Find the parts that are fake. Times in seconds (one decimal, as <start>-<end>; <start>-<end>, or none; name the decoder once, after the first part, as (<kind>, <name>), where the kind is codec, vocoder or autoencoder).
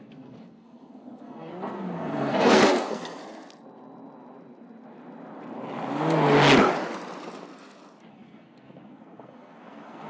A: 0.0-3.2 (codec, SNAC); 8.1-10.1